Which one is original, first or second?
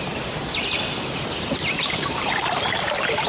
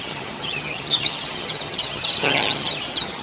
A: first